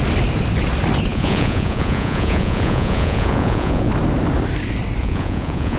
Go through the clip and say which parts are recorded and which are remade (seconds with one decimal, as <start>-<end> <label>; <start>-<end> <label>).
0.0-1.1 recorded; 1.1-3.9 remade; 3.9-5.0 recorded; 5.0-5.8 remade